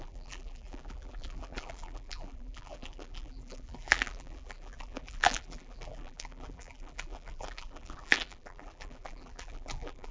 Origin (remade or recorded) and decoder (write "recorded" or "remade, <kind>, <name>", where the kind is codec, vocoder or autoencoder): remade, vocoder, BigVGAN v2